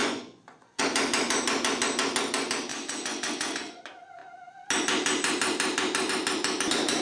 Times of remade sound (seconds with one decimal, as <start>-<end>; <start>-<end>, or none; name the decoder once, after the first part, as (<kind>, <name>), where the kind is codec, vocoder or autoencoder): 0.0-0.8 (vocoder, Vocos); 2.7-3.8